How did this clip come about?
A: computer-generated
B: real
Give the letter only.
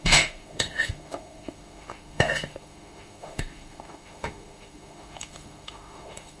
A